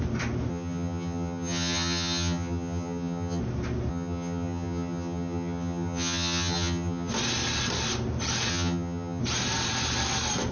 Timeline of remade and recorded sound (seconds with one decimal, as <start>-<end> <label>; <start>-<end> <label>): 0.0-0.5 recorded; 0.5-3.4 remade; 3.4-3.9 recorded; 3.9-7.1 remade; 7.1-8.5 recorded; 8.5-9.2 remade; 9.2-10.5 recorded

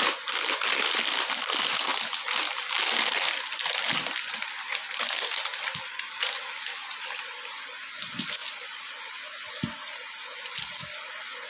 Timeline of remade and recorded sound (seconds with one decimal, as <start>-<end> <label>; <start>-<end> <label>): 0.0-11.5 recorded